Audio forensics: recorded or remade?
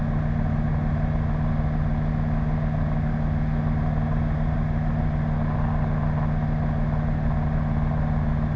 recorded